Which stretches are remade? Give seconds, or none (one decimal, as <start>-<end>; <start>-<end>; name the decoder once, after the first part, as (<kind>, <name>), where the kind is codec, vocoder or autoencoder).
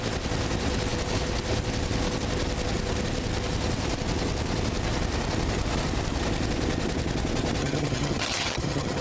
7.6-9.0 (vocoder, HiFi-GAN)